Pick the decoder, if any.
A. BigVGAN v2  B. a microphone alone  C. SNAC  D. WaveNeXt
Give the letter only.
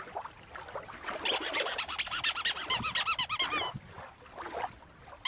B